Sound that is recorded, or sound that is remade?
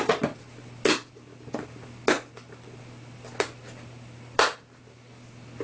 recorded